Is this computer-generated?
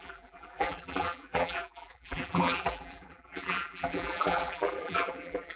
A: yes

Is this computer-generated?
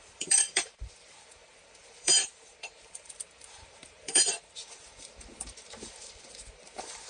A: yes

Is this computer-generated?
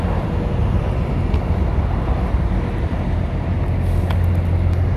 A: no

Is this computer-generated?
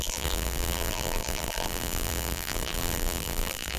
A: yes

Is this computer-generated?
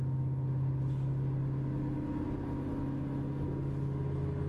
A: no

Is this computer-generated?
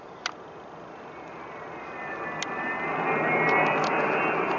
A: no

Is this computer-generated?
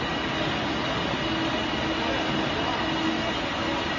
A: no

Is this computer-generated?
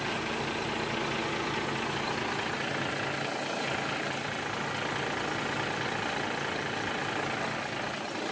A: no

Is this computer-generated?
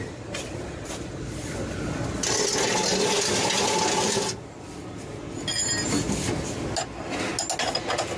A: no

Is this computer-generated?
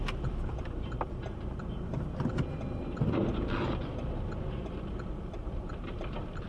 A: yes